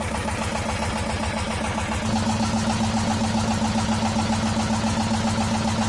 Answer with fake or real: real